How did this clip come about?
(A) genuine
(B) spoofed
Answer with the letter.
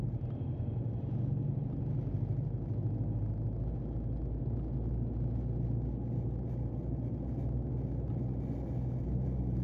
A